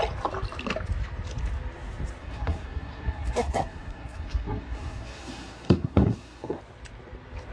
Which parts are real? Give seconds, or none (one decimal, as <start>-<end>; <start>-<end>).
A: 0.0-2.2; 6.6-7.5